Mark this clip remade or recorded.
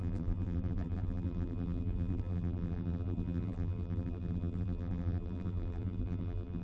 remade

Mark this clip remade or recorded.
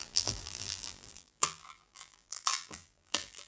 remade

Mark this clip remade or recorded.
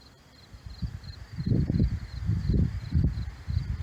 recorded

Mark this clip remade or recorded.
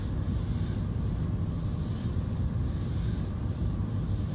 recorded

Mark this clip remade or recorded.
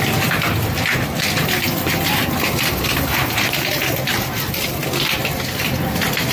recorded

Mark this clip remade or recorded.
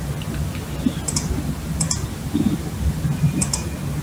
remade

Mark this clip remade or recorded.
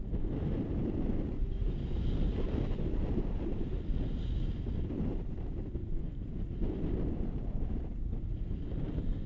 recorded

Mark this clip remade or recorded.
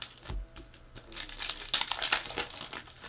recorded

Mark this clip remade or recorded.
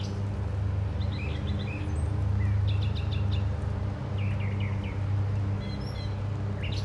recorded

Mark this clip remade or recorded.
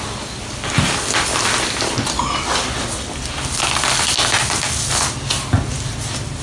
recorded